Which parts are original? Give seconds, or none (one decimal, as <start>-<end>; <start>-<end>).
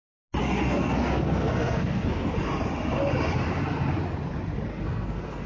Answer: 0.0-0.4; 2.3-4.7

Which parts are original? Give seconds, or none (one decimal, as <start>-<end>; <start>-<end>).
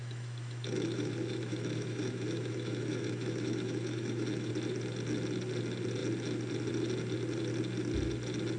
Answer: 4.5-8.6